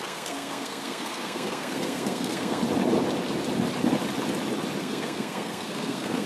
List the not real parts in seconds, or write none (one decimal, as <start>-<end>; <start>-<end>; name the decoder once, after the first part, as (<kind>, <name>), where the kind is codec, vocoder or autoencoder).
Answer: 0.0-2.6 (codec, SNAC); 4.8-6.3